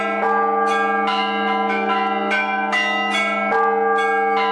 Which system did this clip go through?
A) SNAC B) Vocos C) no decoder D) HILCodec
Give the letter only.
C